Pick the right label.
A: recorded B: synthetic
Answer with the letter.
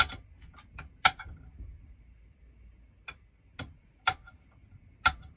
A